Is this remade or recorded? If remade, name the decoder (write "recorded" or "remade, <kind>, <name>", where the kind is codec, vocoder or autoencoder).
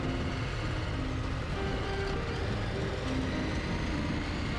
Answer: recorded